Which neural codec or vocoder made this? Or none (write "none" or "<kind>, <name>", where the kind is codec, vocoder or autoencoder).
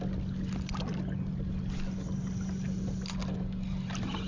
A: none